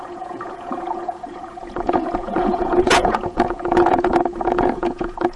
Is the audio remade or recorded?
remade